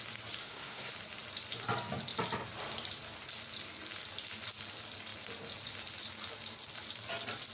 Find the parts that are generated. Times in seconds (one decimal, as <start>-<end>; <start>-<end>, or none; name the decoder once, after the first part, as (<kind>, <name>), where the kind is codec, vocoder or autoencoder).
0.4-0.9 (codec, SNAC)